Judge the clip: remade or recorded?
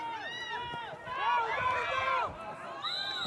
remade